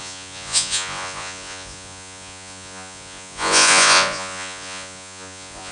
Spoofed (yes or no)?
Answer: yes